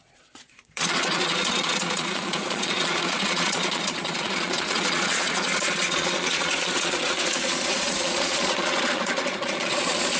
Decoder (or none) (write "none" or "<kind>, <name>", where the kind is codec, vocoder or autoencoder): vocoder, Vocos